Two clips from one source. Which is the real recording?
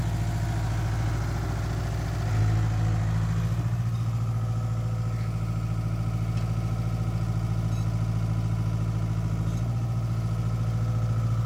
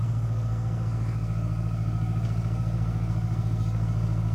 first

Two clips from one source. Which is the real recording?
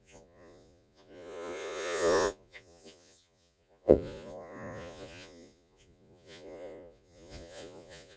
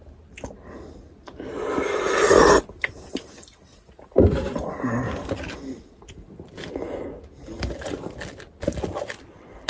second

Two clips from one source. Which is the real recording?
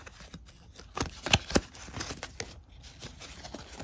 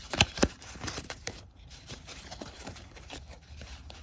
first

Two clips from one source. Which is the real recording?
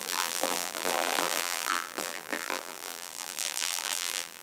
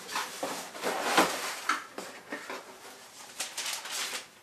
second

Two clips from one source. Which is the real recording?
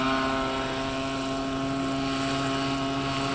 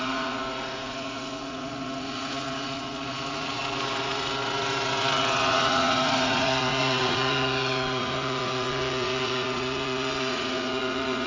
first